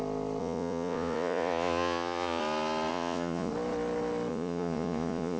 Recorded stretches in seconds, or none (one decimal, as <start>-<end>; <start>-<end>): 0.0-0.4; 2.4-2.9; 3.5-4.3

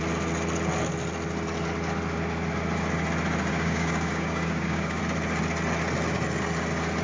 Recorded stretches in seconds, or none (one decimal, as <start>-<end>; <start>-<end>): 0.0-3.5; 5.0-7.0

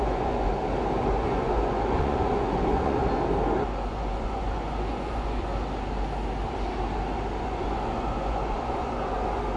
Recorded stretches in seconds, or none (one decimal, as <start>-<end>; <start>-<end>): 0.5-1.1; 3.0-3.9; 5.5-7.4

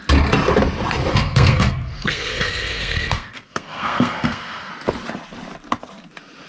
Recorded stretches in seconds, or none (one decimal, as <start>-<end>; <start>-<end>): 0.0-1.1; 4.7-6.5

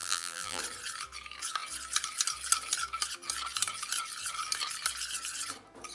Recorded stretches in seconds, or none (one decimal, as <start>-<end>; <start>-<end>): 0.6-5.9

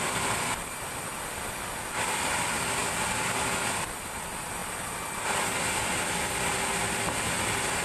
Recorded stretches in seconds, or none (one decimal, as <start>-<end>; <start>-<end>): 0.0-7.8